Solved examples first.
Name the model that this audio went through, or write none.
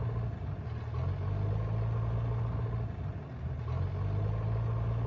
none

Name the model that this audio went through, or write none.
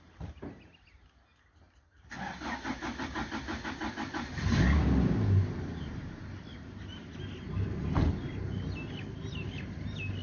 none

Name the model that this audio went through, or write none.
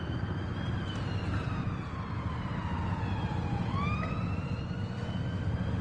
none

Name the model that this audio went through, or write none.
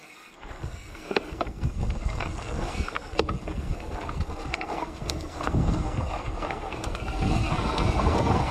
codec, SNAC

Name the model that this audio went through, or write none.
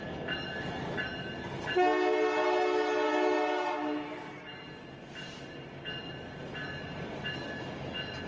none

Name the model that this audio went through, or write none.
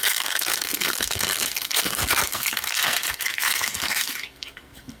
codec, SNAC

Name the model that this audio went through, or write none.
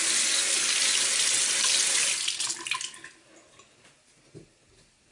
none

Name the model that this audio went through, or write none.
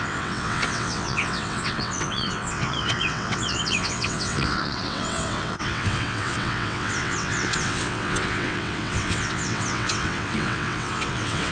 vocoder, WaveNeXt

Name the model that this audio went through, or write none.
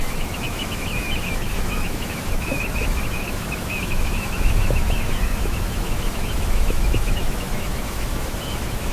autoencoder, DAC-VAE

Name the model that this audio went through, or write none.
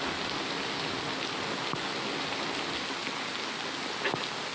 none